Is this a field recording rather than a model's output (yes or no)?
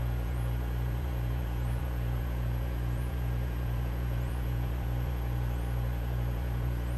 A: no